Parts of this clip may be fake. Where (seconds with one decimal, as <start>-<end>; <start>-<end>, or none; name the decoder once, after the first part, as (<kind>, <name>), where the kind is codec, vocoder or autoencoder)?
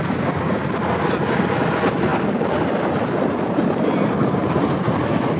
none